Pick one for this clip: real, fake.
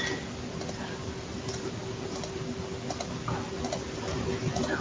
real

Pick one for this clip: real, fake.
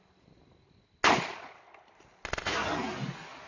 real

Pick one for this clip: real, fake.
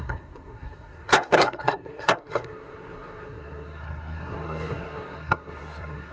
fake